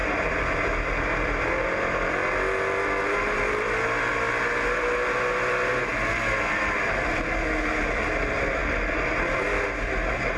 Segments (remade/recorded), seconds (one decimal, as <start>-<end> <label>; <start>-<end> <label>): 0.0-10.4 recorded